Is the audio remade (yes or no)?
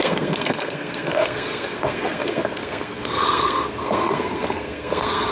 yes